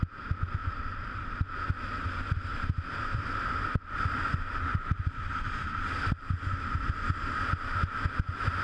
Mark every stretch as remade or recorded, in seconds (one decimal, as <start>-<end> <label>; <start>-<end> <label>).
0.0-0.6 recorded; 0.6-1.3 remade; 1.3-2.5 recorded; 2.5-3.6 remade; 3.6-4.7 recorded; 4.7-6.4 remade; 6.4-8.6 recorded